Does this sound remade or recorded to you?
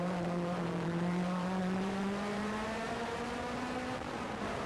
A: remade